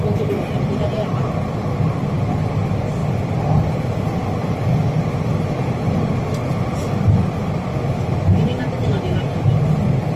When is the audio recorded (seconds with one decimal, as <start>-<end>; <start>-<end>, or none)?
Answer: 0.0-3.0; 3.8-10.2